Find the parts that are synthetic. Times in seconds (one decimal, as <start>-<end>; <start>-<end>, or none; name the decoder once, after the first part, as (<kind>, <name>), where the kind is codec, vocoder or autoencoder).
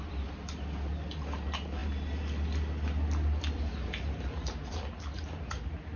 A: none